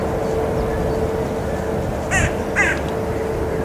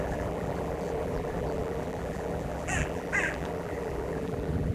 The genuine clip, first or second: first